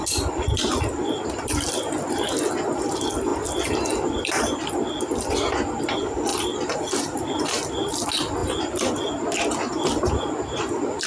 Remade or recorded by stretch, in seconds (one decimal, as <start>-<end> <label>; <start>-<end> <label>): 0.0-6.3 recorded; 6.3-7.4 remade; 7.4-11.1 recorded